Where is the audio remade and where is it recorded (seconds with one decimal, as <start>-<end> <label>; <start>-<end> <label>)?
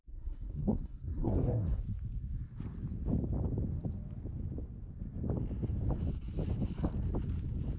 0.0-1.8 remade; 1.8-7.8 recorded